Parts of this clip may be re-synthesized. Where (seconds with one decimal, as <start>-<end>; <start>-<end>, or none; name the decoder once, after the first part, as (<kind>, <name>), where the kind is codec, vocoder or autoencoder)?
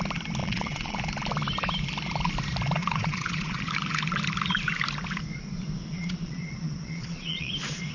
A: 0.4-1.0 (vocoder, Vocos); 2.8-3.7; 5.9-7.5